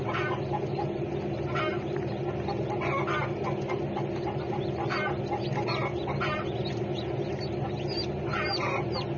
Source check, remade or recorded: recorded